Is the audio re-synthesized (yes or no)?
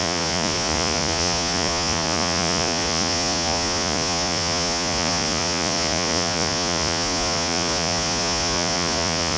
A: yes